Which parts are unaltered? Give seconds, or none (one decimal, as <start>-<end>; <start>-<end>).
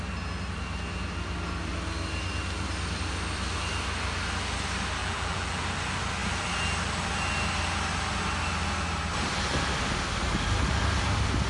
0.0-5.0; 5.6-11.5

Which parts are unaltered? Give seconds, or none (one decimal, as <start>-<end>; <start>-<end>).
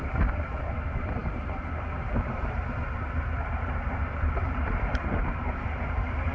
none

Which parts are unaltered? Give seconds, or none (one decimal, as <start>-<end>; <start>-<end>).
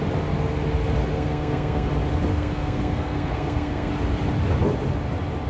0.0-1.1; 1.9-2.3; 3.9-5.5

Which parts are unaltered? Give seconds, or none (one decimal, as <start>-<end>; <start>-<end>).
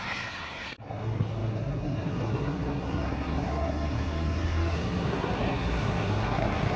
none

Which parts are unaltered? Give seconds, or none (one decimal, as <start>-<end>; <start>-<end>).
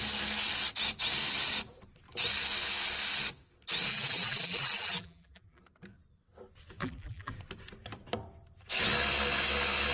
0.0-3.9; 5.6-6.8; 7.3-9.9